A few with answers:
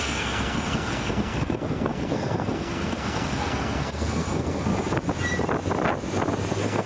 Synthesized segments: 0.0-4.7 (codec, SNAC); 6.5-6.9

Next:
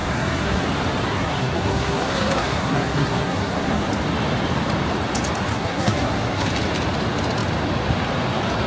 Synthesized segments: 0.0-0.6 (codec, SNAC); 1.1-3.9; 5.5-6.5

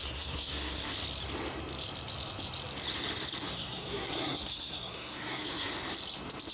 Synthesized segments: 0.0-0.9 (codec, SNAC); 3.4-5.7

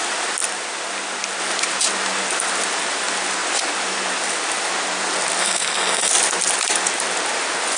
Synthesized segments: 5.4-6.1 (codec, SNAC)

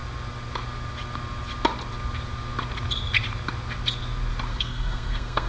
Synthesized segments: 4.5-5.5 (codec, SNAC)

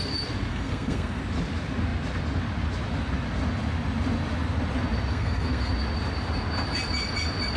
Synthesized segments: 0.5-1.2 (codec, SNAC); 5.1-5.7

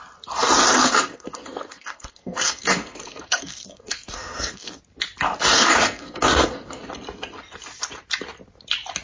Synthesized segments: 0.8-4.8 (codec, SNAC); 5.5-6.8